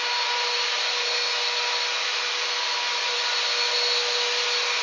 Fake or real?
real